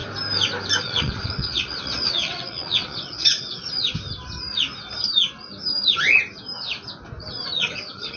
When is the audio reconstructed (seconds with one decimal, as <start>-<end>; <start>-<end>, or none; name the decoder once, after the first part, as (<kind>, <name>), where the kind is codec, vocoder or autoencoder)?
0.8-3.6 (vocoder, WaveNeXt); 7.6-8.2